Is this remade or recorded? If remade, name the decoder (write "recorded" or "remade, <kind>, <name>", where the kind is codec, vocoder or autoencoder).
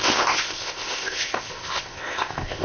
remade, codec, ZipCodec